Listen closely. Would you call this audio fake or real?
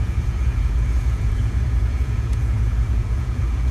fake